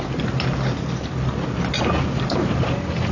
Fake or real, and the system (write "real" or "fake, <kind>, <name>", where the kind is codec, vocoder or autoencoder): real